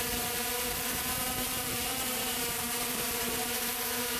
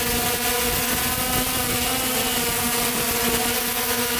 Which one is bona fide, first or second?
second